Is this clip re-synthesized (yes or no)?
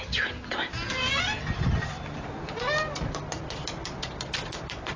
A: no